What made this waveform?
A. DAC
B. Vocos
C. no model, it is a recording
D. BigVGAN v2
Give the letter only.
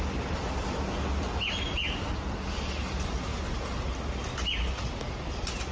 C